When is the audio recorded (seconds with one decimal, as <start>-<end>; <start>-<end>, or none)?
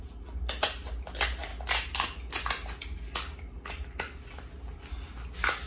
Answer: 0.0-5.7